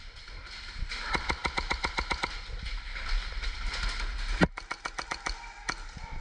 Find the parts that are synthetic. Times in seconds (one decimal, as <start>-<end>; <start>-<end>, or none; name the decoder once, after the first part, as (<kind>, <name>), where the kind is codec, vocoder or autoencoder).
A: none

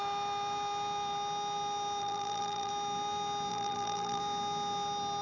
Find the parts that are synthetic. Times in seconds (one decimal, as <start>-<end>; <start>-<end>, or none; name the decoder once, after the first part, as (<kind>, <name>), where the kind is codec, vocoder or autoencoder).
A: 2.0-2.7 (vocoder, BigVGAN v2); 3.5-4.2

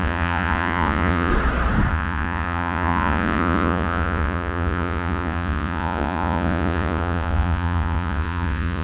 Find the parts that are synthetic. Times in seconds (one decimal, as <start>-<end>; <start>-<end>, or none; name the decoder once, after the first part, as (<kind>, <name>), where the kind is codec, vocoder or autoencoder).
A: 0.0-1.3 (vocoder, Vocos); 1.9-8.8

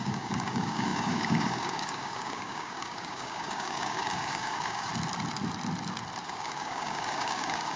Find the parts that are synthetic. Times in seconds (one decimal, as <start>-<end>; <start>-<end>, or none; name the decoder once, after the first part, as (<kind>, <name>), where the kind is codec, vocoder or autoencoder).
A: 0.0-4.9 (codec, DAC); 6.3-7.8

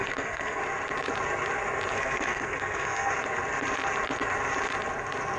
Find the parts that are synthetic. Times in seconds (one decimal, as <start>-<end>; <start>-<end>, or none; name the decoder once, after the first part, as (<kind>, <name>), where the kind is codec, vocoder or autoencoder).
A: 0.0-0.6 (codec, SNAC); 1.9-3.1